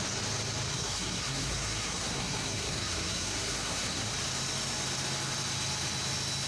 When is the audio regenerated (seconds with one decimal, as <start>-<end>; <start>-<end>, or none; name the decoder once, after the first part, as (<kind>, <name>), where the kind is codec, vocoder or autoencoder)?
0.7-4.1 (codec, SNAC)